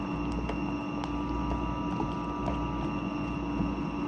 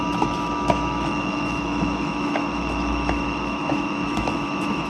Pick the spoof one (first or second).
second